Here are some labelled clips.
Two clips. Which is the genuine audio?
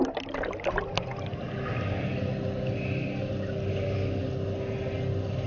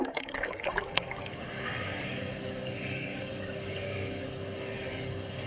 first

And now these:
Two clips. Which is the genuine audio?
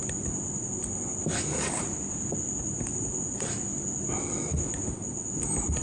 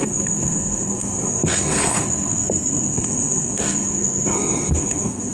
first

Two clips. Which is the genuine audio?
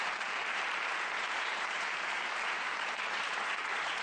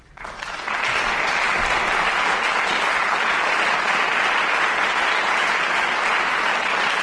second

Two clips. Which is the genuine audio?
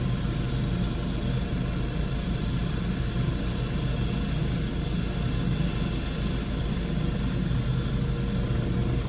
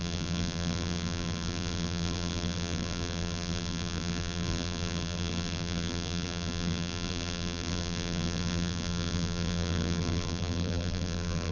first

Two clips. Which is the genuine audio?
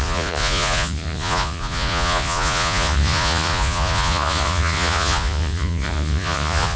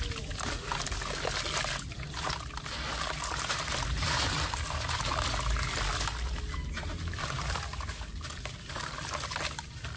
second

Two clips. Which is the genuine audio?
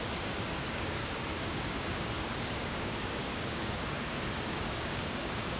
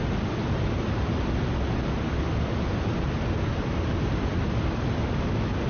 second